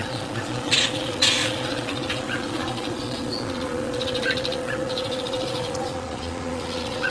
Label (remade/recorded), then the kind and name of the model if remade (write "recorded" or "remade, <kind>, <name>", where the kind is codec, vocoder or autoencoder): remade, vocoder, Vocos